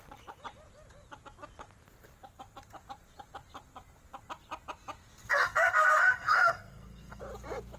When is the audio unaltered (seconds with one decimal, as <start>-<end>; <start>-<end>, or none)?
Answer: 0.0-5.3; 7.2-7.8